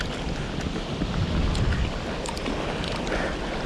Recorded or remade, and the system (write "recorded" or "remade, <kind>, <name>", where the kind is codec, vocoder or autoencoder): recorded